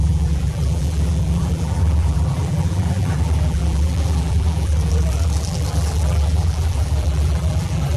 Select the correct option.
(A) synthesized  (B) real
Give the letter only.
A